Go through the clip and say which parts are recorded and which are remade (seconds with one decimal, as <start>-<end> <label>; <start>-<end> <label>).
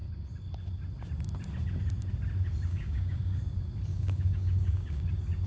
0.0-2.7 recorded; 2.7-3.4 remade; 3.4-3.9 recorded; 3.9-5.1 remade; 5.1-5.5 recorded